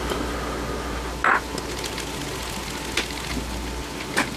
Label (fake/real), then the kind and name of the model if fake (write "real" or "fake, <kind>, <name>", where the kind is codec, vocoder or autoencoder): real